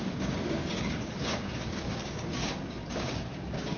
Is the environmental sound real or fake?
fake